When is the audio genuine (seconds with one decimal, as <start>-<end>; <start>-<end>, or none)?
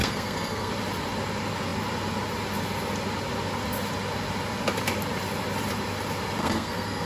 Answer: 0.7-6.4